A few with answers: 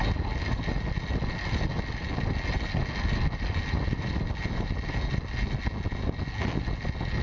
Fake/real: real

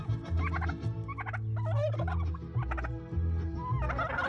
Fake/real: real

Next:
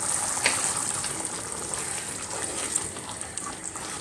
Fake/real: real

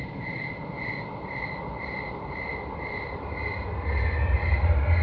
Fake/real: real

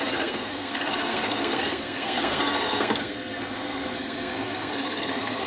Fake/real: fake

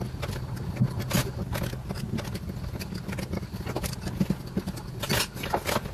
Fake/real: real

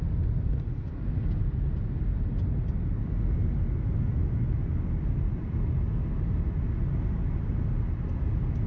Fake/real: real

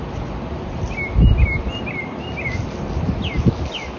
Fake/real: real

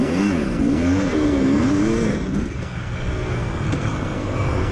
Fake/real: fake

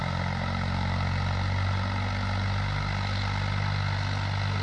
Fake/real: real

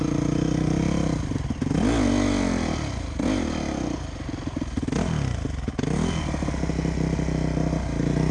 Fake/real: real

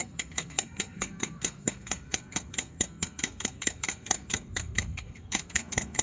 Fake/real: fake